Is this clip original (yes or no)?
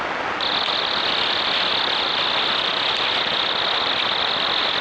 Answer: yes